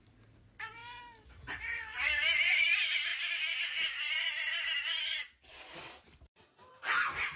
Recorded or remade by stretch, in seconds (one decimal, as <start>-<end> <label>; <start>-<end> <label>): 0.0-1.9 remade; 1.9-2.5 recorded; 2.5-7.4 remade